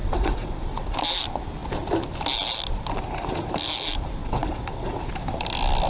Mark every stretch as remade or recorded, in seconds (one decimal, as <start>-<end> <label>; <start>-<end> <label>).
0.0-1.0 remade; 1.0-4.2 recorded; 4.2-5.1 remade; 5.1-5.9 recorded